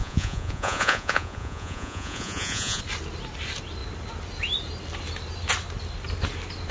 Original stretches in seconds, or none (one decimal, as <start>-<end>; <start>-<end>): 2.8-6.7